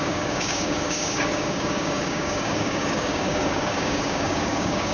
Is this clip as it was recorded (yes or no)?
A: no